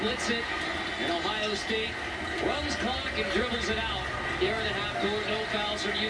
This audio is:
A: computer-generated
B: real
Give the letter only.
B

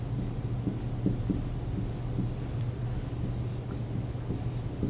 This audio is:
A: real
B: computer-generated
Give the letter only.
A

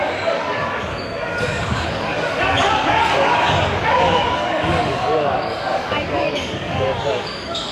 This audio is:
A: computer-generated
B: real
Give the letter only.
A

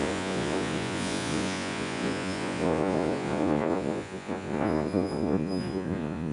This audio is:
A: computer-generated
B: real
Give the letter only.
A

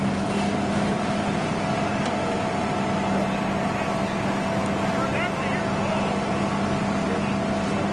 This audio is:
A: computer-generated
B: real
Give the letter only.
B